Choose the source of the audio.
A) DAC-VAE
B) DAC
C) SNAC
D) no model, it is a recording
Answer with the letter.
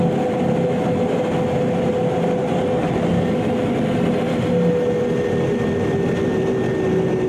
D